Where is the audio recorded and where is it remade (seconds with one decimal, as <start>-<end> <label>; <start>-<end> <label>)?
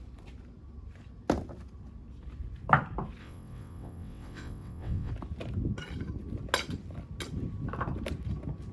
0.0-3.2 recorded; 3.2-5.1 remade; 5.1-8.7 recorded